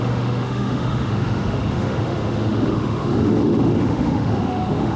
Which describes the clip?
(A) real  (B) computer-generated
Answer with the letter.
B